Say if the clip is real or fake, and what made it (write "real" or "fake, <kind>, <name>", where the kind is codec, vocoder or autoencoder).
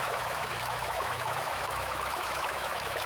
fake, autoencoder, DAC-VAE